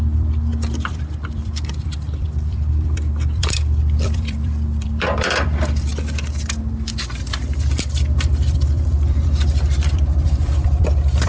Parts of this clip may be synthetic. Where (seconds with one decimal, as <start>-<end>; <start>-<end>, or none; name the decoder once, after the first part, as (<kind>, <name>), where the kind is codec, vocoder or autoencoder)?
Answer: 0.0-5.9 (vocoder, BigVGAN v2); 7.7-11.3